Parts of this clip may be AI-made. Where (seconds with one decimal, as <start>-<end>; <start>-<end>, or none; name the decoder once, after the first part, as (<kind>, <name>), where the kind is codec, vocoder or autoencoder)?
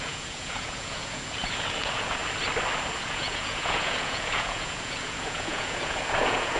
0.0-2.2 (vocoder, Vocos); 3.0-6.6